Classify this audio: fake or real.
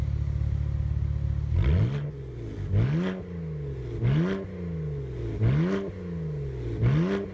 real